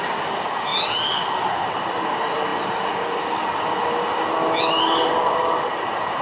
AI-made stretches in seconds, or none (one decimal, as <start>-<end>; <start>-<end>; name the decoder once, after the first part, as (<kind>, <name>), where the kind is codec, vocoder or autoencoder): none